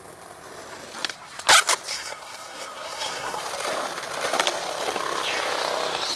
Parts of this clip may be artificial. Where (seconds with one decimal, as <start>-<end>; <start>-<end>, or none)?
1.9-3.4